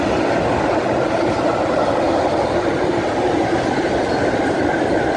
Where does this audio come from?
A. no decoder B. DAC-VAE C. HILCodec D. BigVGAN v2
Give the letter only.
D